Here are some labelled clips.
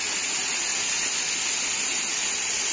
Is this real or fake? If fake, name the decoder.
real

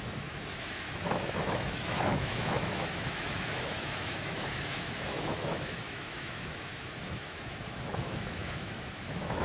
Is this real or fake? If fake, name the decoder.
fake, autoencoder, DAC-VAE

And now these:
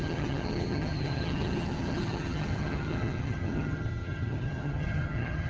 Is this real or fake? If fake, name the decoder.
fake, vocoder, HiFi-GAN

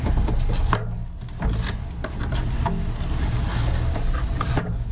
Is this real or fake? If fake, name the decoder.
real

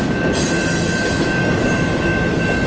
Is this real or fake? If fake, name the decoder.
real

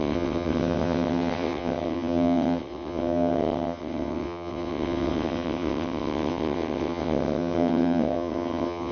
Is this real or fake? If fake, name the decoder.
fake, vocoder, WaveNeXt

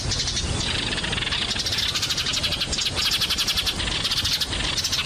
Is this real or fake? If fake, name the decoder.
real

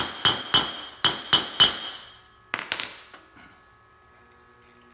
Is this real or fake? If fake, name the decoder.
real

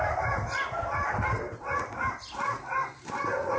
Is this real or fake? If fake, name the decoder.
real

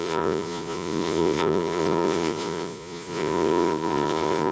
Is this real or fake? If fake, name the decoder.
fake, vocoder, Vocos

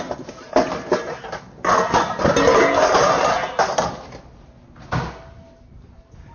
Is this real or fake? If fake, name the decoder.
real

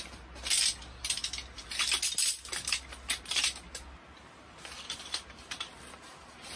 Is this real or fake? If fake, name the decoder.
real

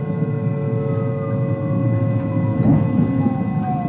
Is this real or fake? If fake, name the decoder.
real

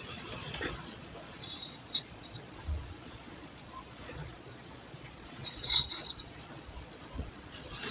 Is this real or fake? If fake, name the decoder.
fake, vocoder, Vocos